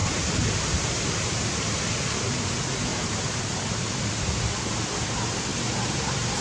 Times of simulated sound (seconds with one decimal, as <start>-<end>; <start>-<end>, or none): 0.0-1.8; 2.9-4.1; 5.5-6.4